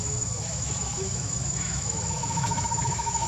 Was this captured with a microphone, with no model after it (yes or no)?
no